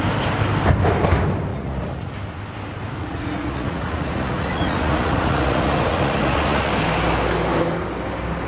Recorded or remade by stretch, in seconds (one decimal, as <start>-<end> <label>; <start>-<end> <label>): 0.0-1.5 recorded; 1.5-2.1 remade; 2.1-3.0 recorded; 3.0-6.7 remade; 6.7-8.5 recorded